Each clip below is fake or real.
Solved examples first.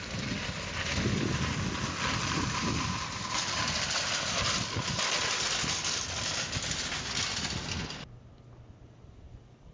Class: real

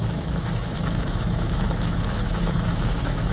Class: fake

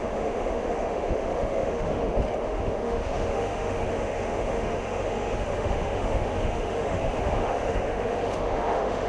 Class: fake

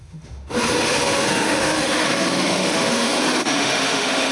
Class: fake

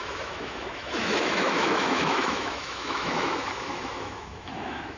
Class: fake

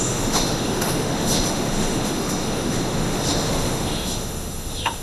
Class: fake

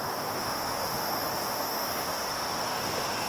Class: fake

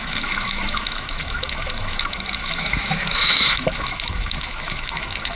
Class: fake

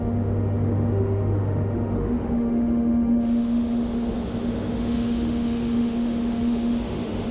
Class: fake